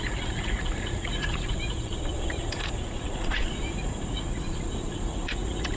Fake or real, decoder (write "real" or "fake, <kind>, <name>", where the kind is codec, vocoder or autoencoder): fake, vocoder, Vocos